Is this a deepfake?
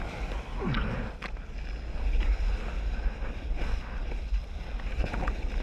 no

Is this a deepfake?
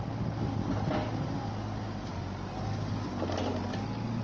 no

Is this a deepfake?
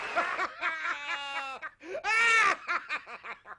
no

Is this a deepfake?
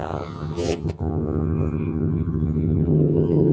yes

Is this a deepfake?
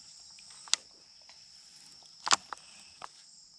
no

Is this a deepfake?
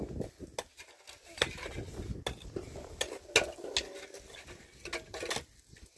no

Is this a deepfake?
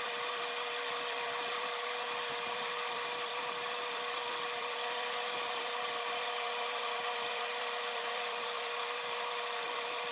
yes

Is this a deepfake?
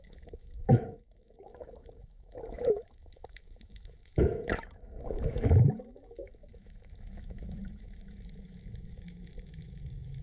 yes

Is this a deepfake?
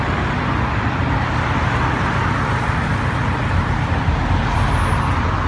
no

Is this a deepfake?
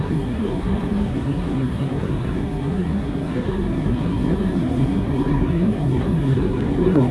yes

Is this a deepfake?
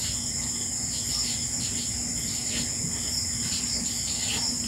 no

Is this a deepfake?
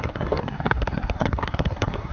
yes